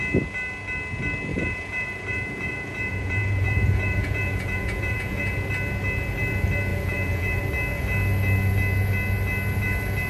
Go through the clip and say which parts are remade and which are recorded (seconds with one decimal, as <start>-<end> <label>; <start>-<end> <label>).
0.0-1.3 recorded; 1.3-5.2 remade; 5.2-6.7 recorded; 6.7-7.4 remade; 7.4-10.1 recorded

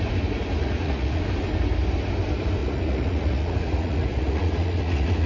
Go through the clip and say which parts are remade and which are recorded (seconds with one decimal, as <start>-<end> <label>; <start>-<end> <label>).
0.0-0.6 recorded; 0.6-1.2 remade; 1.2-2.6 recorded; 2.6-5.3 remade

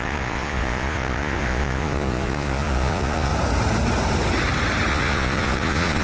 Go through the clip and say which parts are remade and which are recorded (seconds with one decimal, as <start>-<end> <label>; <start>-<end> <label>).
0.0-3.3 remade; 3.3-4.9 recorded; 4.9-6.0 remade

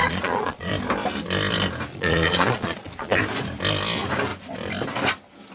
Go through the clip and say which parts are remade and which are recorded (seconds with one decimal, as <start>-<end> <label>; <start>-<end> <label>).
0.0-0.7 remade; 0.7-1.9 recorded; 1.9-3.2 remade; 3.2-5.5 recorded

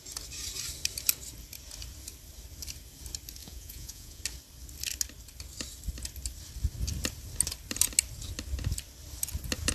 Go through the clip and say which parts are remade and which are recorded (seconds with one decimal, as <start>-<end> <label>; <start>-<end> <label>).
0.0-3.4 recorded; 3.4-4.2 remade; 4.2-9.7 recorded

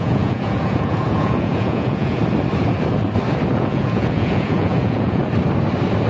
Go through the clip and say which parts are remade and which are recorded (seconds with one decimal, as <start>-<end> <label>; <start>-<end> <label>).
0.0-2.2 remade; 2.2-3.5 recorded; 3.5-5.2 remade; 5.2-6.1 recorded

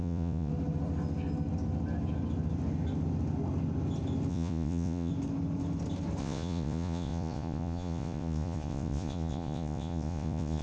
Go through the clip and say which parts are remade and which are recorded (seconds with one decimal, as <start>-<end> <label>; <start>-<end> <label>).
0.0-0.5 remade; 0.5-4.3 recorded; 4.3-5.1 remade; 5.1-6.2 recorded; 6.2-10.6 remade